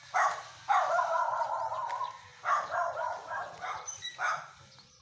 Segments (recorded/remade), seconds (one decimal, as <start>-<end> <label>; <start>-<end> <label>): 0.0-2.3 recorded; 2.3-5.0 remade